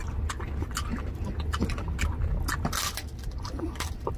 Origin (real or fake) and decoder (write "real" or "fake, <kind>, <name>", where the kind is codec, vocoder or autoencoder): real